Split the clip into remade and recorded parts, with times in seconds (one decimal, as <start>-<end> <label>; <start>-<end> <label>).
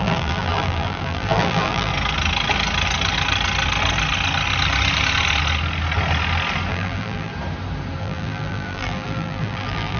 0.0-1.9 remade; 1.9-6.7 recorded; 6.7-7.3 remade; 7.3-8.0 recorded; 8.0-10.0 remade